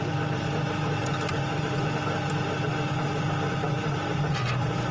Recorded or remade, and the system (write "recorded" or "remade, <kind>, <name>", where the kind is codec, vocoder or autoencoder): recorded